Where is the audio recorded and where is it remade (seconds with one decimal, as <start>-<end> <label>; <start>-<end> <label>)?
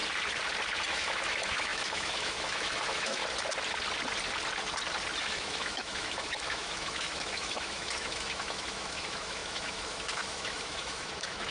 0.0-0.9 recorded; 0.9-3.2 remade; 3.2-5.2 recorded; 5.2-11.5 remade